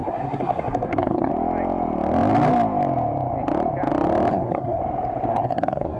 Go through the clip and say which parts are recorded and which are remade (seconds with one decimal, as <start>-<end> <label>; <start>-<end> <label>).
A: 0.0-1.3 remade; 1.3-4.3 recorded; 4.3-4.8 remade; 4.8-5.3 recorded; 5.3-6.0 remade